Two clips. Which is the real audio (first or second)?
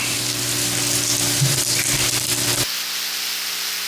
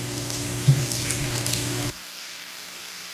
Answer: first